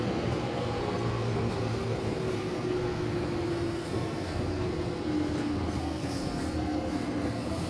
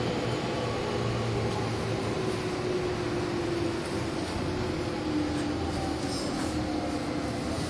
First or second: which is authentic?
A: second